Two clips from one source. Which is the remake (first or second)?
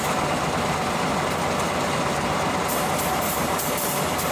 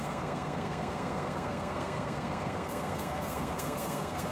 second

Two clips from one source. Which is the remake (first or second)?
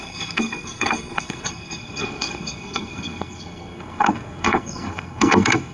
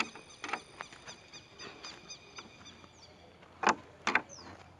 first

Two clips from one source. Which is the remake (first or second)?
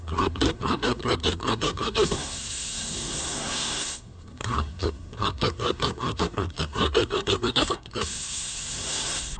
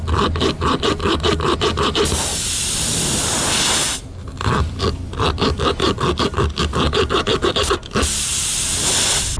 first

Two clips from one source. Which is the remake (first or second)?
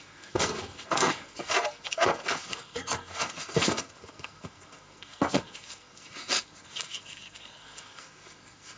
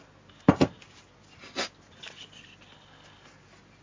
first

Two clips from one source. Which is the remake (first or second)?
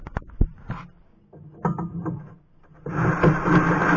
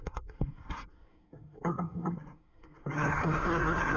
second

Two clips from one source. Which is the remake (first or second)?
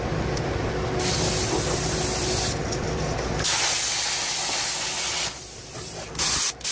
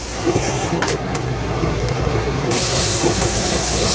second